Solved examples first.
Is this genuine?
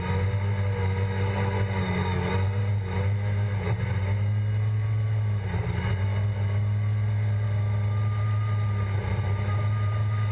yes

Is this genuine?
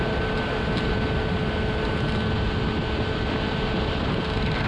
yes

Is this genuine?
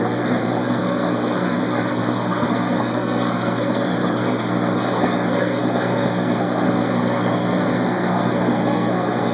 no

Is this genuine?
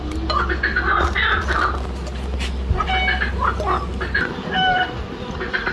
yes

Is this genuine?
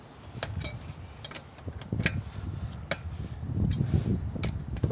yes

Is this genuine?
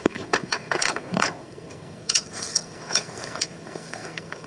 no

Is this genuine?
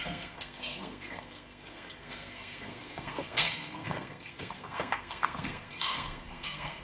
no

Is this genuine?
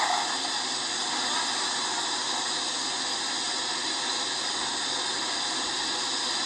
yes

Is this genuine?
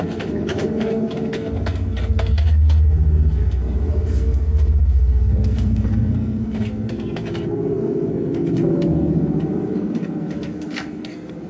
no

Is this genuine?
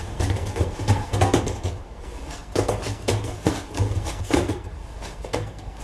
no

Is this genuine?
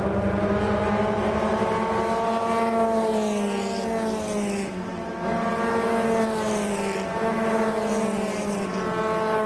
yes